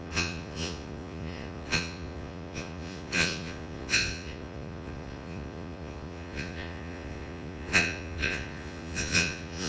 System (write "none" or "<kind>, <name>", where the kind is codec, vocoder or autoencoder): vocoder, Vocos